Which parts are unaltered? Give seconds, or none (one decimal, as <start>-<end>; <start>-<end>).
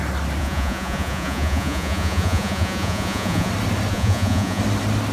0.0-0.4; 3.5-3.9; 4.6-5.1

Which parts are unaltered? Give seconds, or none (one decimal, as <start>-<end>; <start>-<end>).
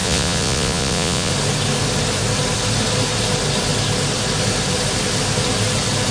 1.3-6.1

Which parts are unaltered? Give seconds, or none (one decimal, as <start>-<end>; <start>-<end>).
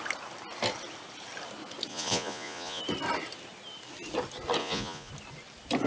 0.0-1.9; 2.8-4.6; 5.1-5.9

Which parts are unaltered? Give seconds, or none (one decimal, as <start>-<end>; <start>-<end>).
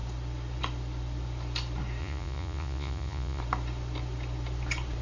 0.0-2.0; 3.4-5.0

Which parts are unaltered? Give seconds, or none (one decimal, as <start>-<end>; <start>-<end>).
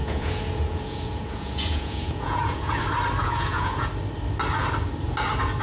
2.8-3.2; 3.9-5.6